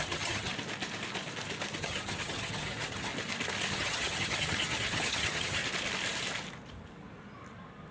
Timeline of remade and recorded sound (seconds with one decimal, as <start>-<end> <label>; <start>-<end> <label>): 0.0-0.5 remade; 0.5-1.8 recorded; 1.8-3.1 remade; 3.1-3.7 recorded; 3.7-5.6 remade; 5.6-7.9 recorded